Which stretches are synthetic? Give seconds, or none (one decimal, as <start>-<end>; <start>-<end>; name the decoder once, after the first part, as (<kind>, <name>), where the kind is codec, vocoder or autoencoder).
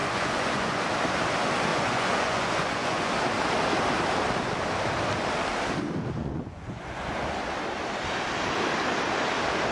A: 0.0-0.8 (vocoder, Vocos); 1.7-3.1; 6.2-7.1